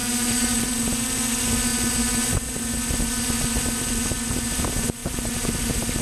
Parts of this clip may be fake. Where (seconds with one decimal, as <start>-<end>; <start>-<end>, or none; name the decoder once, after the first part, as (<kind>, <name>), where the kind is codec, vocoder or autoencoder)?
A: 0.0-0.7 (vocoder, BigVGAN v2); 5.0-6.0

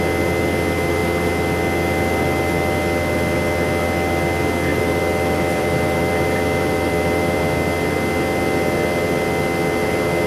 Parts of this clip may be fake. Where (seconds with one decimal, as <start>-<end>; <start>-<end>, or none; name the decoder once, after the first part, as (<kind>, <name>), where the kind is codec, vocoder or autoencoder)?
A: 4.7-7.4 (vocoder, BigVGAN v2)

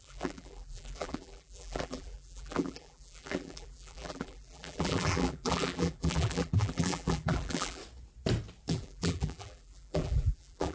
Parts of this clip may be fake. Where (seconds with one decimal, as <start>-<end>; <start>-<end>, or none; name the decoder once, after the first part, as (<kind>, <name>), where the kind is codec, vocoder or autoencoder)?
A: 0.0-7.8 (vocoder, BigVGAN v2); 8.7-10.7

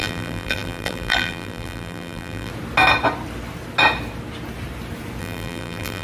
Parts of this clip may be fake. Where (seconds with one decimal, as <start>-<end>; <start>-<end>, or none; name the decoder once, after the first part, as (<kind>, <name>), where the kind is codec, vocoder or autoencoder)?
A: 0.0-2.5 (vocoder, BigVGAN v2); 5.2-6.0